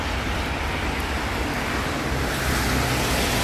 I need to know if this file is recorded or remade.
remade